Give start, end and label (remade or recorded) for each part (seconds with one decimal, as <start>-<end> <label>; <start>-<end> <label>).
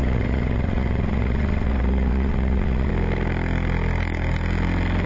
0.0-2.9 remade; 2.9-5.1 recorded